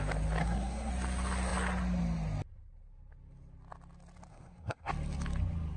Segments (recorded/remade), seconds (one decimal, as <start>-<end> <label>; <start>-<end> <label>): 0.0-0.4 recorded; 0.4-0.9 remade; 0.9-4.3 recorded; 4.3-4.9 remade; 4.9-5.8 recorded